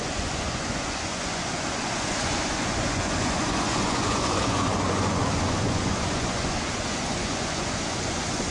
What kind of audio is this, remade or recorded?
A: remade